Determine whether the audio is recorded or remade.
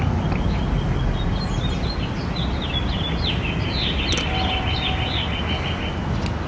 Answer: recorded